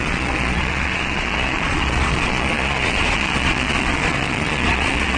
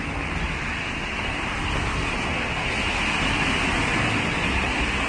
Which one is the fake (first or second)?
first